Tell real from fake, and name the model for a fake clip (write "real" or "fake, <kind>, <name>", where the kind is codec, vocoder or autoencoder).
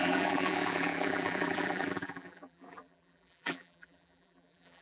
fake, vocoder, BigVGAN v2